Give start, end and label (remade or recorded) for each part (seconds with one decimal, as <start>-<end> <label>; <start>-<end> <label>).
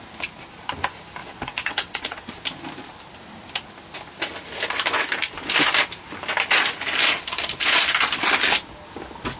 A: 0.0-1.2 recorded; 1.2-2.3 remade; 2.3-9.4 recorded